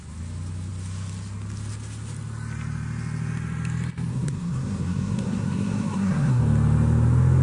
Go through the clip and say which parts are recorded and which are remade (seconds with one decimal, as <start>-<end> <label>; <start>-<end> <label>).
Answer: 0.0-4.1 recorded; 4.1-6.4 remade; 6.4-7.4 recorded